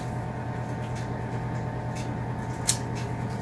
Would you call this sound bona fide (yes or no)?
yes